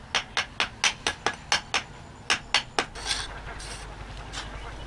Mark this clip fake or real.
real